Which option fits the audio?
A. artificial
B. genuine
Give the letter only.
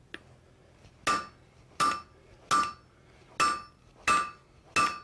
B